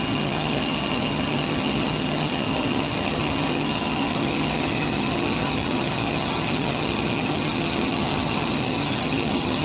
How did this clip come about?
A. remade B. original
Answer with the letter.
A